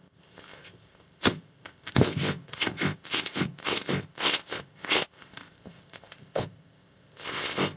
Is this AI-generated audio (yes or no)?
yes